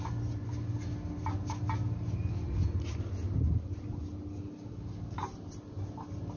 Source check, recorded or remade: recorded